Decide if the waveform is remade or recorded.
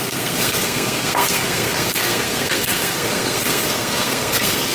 remade